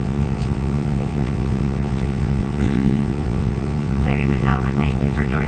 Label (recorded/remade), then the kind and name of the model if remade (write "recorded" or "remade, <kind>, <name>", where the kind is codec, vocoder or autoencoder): remade, vocoder, WaveNeXt